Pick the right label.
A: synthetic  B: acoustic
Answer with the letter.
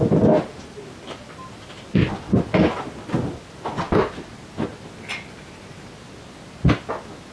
B